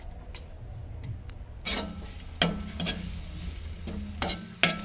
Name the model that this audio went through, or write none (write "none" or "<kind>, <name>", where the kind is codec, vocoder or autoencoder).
none